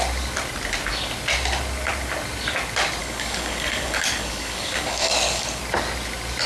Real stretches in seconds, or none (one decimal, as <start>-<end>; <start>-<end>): 0.0-3.0; 5.6-6.5